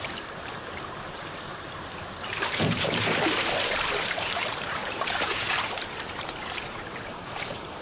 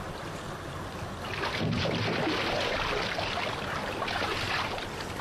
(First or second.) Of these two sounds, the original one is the second